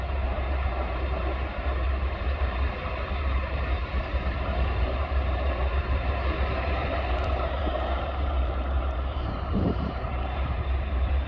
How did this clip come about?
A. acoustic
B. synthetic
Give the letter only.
B